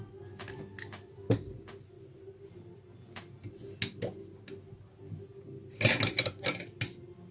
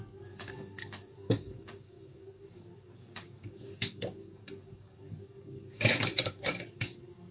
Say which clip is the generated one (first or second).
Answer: second